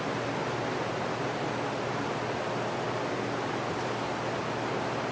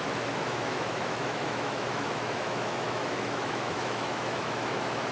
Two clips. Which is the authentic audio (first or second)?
first